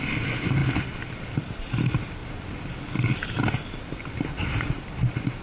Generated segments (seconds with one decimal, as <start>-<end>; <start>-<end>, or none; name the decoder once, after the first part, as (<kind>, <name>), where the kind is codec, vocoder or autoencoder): none